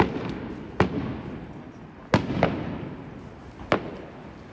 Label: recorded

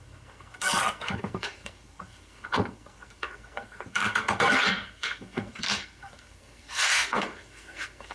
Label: remade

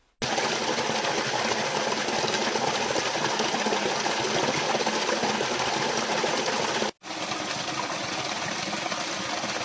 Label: recorded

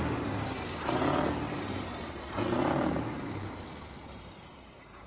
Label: remade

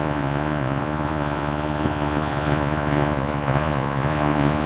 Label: remade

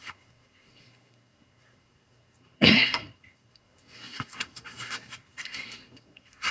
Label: remade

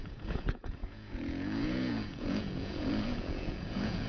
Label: remade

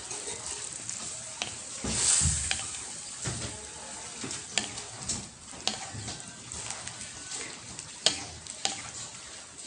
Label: recorded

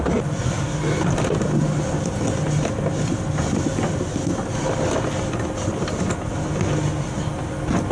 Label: recorded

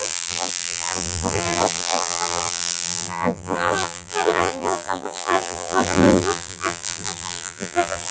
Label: remade